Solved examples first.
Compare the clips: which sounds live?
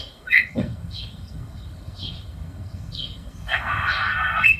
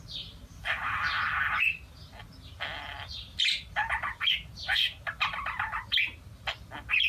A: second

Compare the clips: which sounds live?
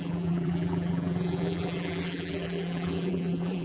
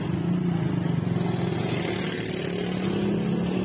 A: second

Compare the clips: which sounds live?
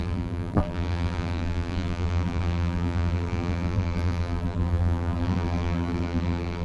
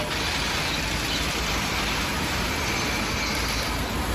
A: second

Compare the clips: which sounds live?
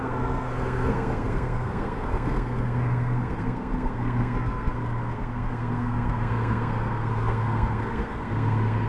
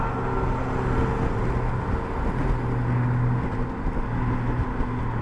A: second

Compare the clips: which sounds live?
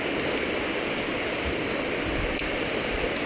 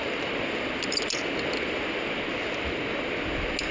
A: second